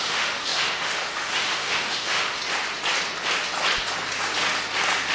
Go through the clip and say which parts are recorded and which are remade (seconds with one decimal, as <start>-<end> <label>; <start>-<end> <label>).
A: 0.0-2.4 remade; 2.4-5.1 recorded